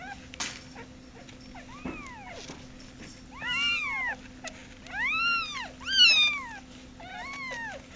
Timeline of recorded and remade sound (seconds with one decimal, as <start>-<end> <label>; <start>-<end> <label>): 0.0-8.0 recorded